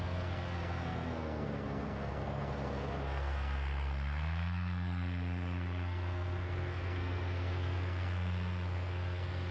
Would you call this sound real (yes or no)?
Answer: no